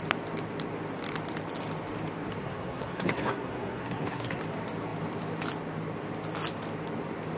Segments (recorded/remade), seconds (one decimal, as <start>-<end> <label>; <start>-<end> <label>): 0.0-2.4 recorded; 2.4-4.4 remade; 4.4-7.4 recorded